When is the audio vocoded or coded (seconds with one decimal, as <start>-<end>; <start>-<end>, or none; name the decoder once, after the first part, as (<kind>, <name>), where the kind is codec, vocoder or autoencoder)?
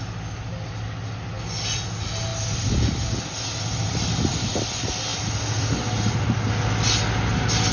none